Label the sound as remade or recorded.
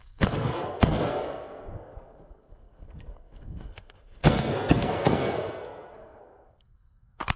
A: remade